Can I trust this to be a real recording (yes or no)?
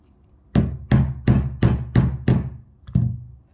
yes